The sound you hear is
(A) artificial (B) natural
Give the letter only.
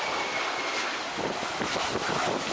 B